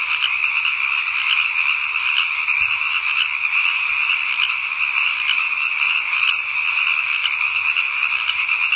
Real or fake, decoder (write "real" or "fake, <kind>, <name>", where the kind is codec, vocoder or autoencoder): real